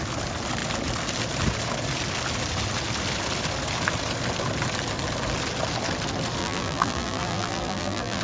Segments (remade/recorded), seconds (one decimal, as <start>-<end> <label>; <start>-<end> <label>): 0.0-6.4 recorded; 6.4-8.2 remade